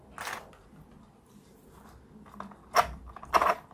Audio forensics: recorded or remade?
recorded